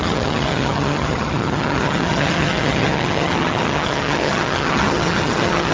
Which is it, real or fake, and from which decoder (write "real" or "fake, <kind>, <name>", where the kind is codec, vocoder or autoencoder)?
fake, vocoder, HiFi-GAN